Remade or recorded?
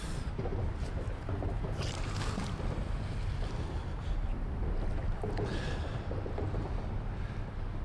recorded